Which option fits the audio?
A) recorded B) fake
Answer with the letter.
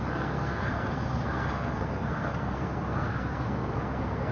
B